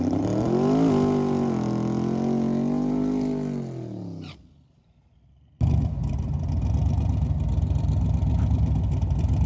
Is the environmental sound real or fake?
real